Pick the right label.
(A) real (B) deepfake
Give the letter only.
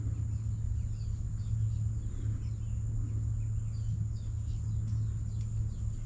A